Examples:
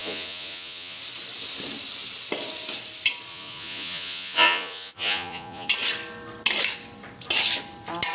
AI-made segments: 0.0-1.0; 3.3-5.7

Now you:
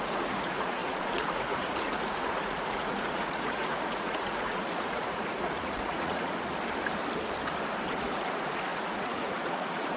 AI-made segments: 0.0-6.5; 7.9-10.0

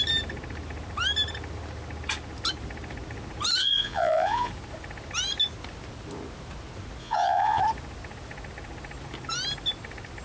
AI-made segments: 3.6-4.5; 7.0-7.6

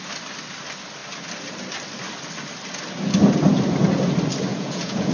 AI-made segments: 4.5-5.1